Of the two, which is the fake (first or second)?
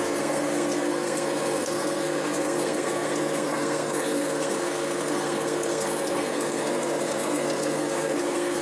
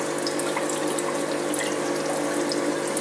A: first